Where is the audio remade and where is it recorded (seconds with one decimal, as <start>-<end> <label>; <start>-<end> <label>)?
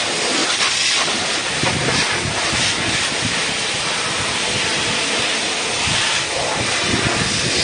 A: 0.0-0.4 recorded; 0.4-2.1 remade; 2.1-3.4 recorded; 3.4-4.2 remade; 4.2-7.6 recorded